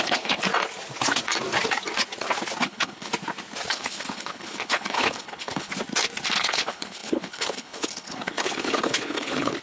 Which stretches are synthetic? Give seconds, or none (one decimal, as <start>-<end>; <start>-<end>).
0.0-0.4; 2.6-3.1; 3.7-5.7; 6.4-9.6